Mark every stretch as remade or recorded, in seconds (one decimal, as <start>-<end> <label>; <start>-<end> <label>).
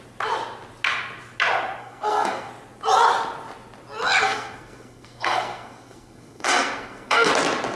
0.0-1.8 recorded; 1.8-2.5 remade; 2.5-4.2 recorded; 4.2-7.3 remade; 7.3-7.8 recorded